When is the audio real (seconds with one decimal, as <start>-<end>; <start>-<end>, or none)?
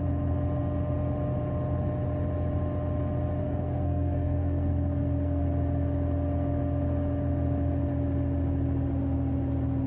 0.0-3.4; 5.4-9.9